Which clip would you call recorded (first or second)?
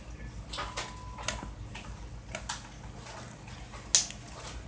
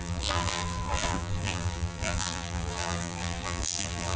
first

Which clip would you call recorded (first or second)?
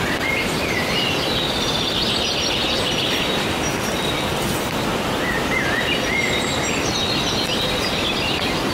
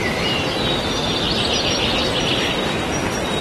second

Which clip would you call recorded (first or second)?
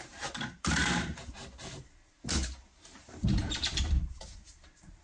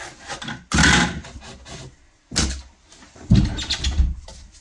second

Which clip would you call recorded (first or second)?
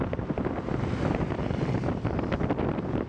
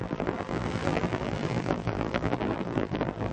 first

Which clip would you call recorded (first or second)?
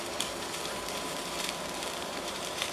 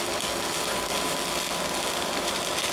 second